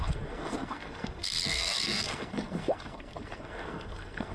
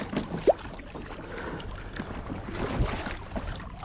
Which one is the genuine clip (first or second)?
second